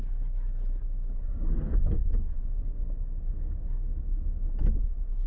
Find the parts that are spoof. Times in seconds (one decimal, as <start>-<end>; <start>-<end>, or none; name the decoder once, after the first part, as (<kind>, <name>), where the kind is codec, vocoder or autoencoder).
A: none